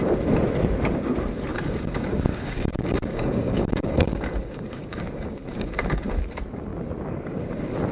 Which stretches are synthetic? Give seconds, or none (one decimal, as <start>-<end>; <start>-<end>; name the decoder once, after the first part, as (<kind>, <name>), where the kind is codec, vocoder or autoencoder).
1.5-6.2 (codec, DAC)